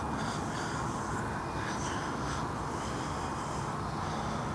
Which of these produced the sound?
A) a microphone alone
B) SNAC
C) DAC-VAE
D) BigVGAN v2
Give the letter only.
A